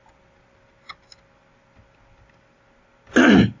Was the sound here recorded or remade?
recorded